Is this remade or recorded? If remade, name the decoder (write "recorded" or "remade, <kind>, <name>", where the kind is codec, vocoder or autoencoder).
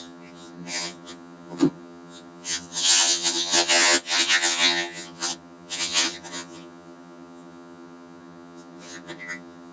remade, vocoder, HiFi-GAN